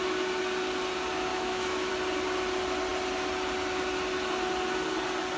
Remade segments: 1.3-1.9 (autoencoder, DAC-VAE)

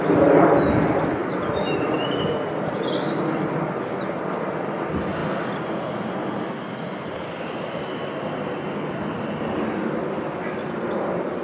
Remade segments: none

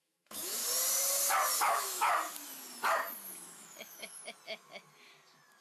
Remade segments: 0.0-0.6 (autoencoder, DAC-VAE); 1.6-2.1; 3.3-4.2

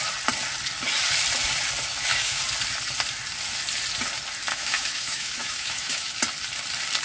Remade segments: 1.9-2.4 (autoencoder, DAC-VAE); 4.5-6.1